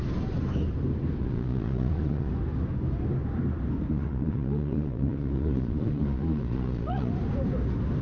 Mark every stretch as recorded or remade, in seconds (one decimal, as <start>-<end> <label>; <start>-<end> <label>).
0.0-1.2 recorded; 1.2-2.3 remade; 2.3-3.9 recorded; 3.9-7.1 remade; 7.1-8.0 recorded